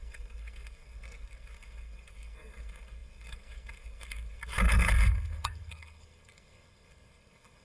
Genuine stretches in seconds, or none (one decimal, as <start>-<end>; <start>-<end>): none